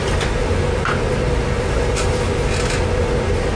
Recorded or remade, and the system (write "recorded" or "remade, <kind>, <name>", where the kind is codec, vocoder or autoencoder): recorded